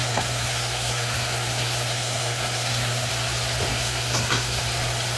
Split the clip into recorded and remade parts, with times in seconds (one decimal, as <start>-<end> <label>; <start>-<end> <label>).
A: 0.0-3.1 remade; 3.1-3.7 recorded; 3.7-4.6 remade; 4.6-5.2 recorded